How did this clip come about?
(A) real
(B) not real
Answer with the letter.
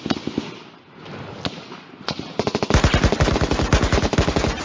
A